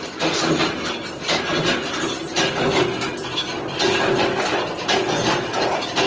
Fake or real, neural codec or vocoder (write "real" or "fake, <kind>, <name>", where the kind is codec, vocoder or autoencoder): real